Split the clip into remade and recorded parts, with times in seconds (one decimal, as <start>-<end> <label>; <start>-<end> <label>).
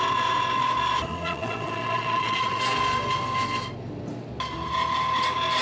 0.0-1.1 recorded; 1.1-2.6 remade; 2.6-5.6 recorded